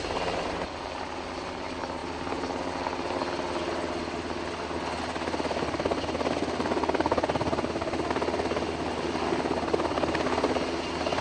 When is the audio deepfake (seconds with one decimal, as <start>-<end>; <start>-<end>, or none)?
none